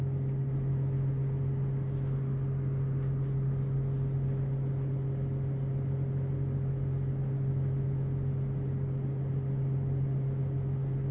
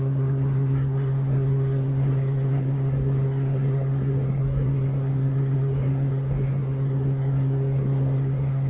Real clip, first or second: first